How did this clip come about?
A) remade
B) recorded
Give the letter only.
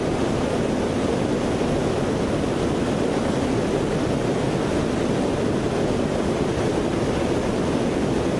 B